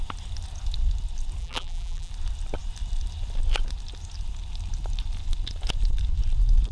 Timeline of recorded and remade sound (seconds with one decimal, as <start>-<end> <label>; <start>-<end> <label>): 0.0-1.4 recorded; 1.4-2.1 remade; 2.1-6.7 recorded